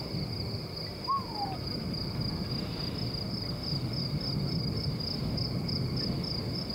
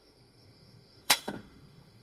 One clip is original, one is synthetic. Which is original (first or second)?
first